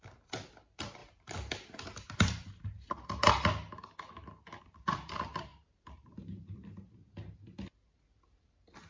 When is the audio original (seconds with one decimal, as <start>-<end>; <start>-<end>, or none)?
0.0-1.0; 3.3-5.5; 6.9-8.9